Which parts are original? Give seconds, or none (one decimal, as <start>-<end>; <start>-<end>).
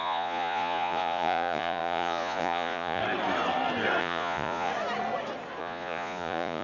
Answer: 3.0-4.0; 4.7-5.6